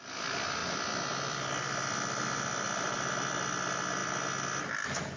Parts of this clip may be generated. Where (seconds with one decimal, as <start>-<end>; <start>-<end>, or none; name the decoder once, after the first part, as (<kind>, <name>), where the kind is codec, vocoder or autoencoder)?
0.6-3.3 (vocoder, BigVGAN v2)